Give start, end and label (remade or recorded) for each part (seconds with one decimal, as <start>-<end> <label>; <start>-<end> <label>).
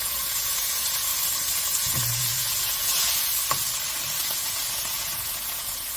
0.0-1.1 remade; 1.1-1.6 recorded; 1.6-3.3 remade; 3.3-4.2 recorded; 4.2-6.0 remade